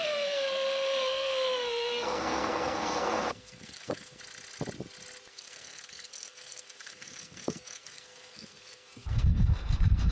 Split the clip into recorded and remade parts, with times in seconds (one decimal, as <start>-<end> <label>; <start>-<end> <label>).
0.0-4.2 remade; 4.2-5.3 recorded; 5.3-10.1 remade